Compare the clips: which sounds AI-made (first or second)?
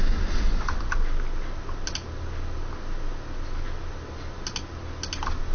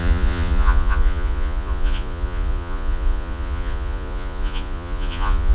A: second